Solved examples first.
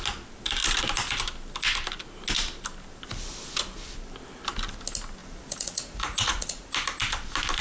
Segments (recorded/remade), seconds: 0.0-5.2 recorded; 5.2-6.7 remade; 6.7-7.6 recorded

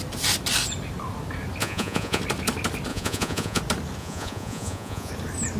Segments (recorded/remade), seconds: 0.0-1.6 recorded; 1.6-2.2 remade; 2.2-2.9 recorded; 2.9-3.6 remade; 3.6-4.0 recorded; 4.0-5.1 remade; 5.1-5.6 recorded

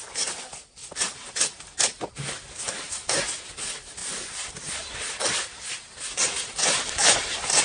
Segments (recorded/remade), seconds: 0.0-7.6 recorded